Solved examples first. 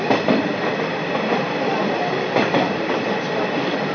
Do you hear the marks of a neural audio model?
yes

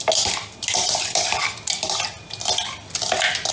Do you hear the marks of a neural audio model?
no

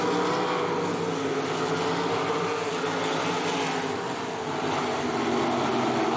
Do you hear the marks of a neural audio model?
no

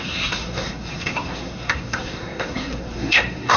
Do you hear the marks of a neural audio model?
yes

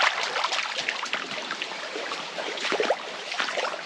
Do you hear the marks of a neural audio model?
yes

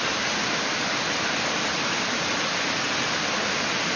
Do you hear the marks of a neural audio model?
no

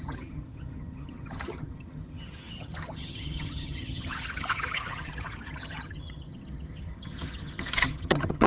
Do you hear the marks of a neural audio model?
yes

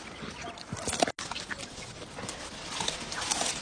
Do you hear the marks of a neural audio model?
no